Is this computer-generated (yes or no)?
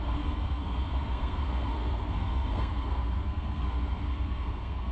yes